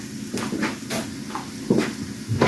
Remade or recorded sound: recorded